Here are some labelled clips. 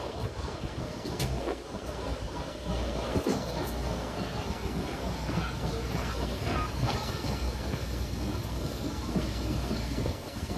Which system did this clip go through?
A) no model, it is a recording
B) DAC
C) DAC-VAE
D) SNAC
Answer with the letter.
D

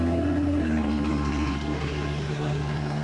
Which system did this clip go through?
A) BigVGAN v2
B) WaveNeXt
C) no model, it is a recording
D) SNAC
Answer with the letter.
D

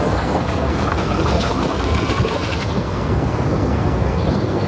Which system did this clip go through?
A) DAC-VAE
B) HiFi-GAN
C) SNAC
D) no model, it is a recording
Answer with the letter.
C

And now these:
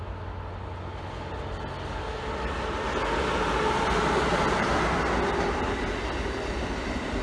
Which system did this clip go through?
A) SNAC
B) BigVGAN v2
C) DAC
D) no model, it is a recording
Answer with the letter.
D